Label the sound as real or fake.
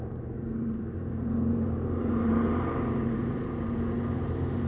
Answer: fake